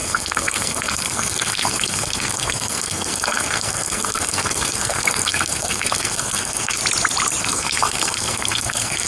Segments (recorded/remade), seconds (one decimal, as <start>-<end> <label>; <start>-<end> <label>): 0.0-6.8 remade; 6.8-7.4 recorded; 7.4-9.1 remade